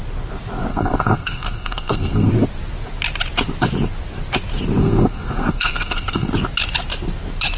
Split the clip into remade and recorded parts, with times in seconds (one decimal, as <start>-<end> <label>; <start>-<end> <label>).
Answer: 0.0-0.7 recorded; 0.7-2.3 remade; 2.3-4.8 recorded; 4.8-6.3 remade; 6.3-7.6 recorded